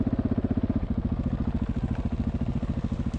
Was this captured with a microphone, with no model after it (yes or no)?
yes